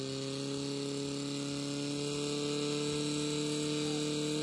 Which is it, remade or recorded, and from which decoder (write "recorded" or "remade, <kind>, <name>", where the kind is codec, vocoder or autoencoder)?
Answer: recorded